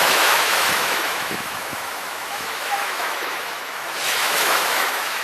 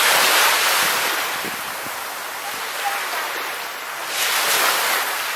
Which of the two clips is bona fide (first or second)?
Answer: second